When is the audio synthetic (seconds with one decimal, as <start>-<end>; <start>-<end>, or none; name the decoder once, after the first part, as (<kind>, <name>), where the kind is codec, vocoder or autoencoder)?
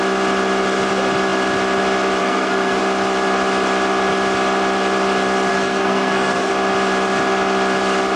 2.2-2.8 (codec, SNAC); 5.5-6.5